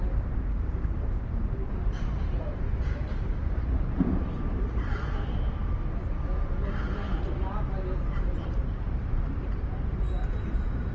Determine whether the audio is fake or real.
fake